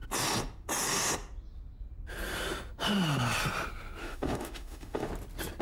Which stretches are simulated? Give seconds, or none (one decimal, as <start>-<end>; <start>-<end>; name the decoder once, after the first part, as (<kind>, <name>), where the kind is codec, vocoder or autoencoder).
4.0-5.1 (autoencoder, DAC-VAE)

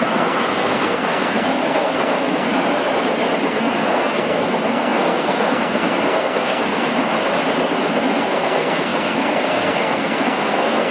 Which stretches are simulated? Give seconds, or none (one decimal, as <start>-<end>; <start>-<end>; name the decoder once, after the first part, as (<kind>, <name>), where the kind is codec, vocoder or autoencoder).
0.0-2.5 (codec, SNAC); 3.5-6.9; 8.0-10.9